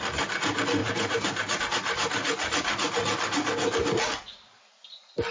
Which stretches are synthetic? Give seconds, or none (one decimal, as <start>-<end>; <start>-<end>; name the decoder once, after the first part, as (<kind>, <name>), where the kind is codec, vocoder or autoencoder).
0.8-1.6 (vocoder, BigVGAN v2)